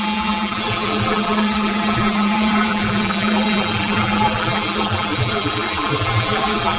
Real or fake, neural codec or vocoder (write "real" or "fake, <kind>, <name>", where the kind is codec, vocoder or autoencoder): fake, vocoder, BigVGAN v2